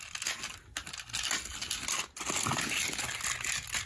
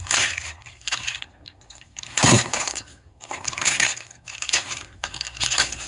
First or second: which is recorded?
first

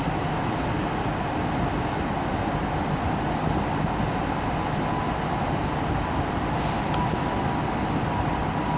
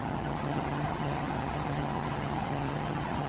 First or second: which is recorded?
first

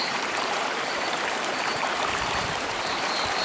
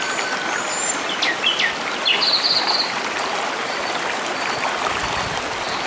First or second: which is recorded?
second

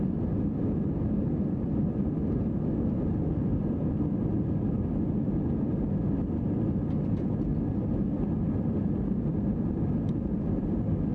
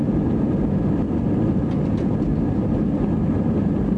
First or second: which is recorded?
first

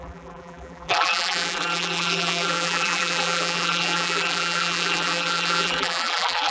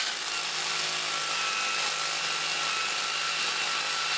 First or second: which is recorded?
second